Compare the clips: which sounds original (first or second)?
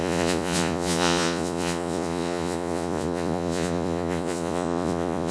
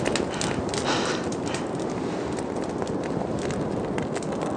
second